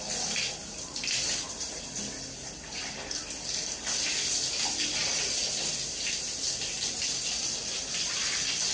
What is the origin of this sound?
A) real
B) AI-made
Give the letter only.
A